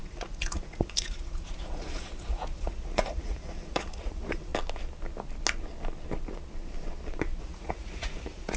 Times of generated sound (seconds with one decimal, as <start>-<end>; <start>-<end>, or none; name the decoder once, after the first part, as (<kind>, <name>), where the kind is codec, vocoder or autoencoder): 0.0-4.5 (vocoder, Vocos); 7.4-8.6